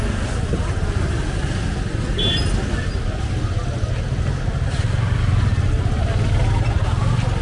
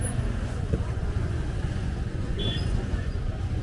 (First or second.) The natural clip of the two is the first